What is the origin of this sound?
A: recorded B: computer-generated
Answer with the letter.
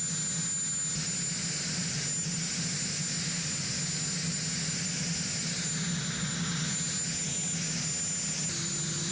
A